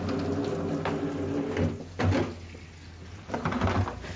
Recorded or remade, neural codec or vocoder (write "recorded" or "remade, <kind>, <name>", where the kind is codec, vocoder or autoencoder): recorded